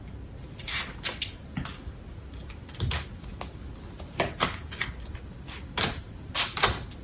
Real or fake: real